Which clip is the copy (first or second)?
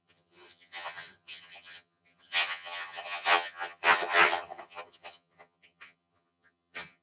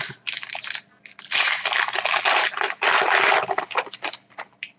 first